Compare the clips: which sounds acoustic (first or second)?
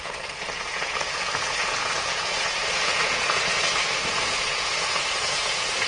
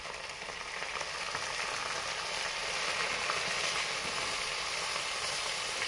second